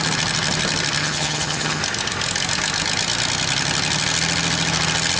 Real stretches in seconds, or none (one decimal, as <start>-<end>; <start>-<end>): 0.0-1.0; 1.8-5.2